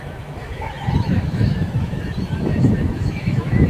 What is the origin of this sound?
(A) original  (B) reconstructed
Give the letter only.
B